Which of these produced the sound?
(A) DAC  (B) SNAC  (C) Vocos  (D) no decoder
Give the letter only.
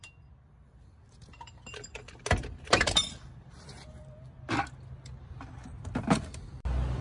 D